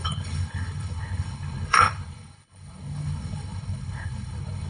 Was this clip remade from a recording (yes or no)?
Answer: yes